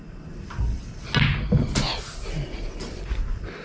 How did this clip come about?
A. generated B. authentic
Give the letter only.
B